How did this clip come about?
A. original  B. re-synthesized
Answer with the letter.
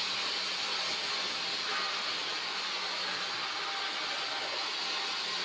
A